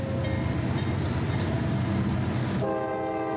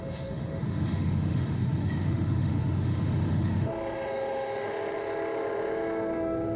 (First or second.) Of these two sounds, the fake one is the second